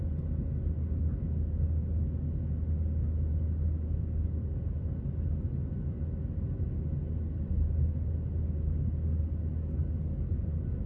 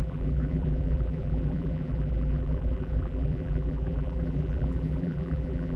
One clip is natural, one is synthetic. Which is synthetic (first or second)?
second